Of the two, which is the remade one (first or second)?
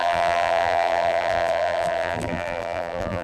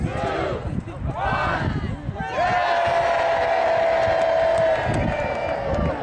first